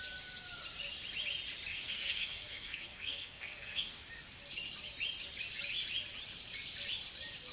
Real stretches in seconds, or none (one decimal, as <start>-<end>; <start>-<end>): 0.0-1.7; 4.0-7.5